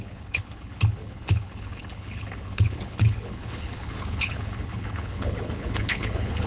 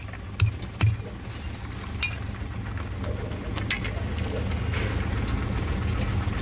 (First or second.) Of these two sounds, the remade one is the first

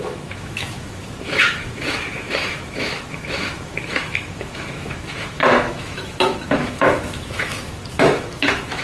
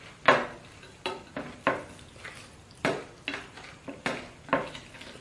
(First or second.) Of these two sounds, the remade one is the first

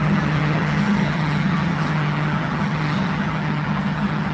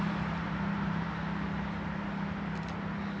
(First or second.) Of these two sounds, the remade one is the first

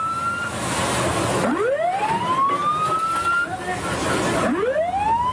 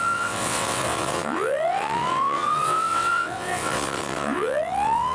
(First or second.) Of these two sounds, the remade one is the second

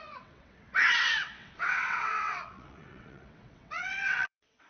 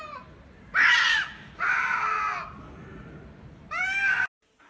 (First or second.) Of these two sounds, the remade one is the first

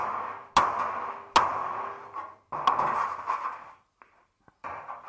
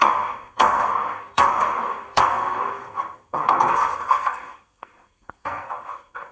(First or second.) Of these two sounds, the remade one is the second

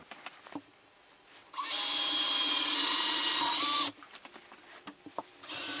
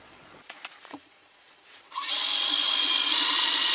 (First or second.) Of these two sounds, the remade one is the second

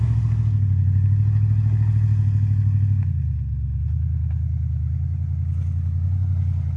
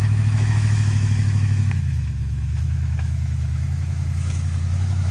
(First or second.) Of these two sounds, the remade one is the second